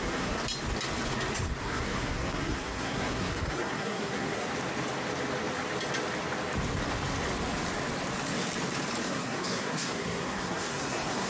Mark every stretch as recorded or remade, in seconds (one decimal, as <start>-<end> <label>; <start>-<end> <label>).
0.0-0.4 remade; 0.4-1.6 recorded; 1.6-4.5 remade; 4.5-9.0 recorded; 9.0-11.3 remade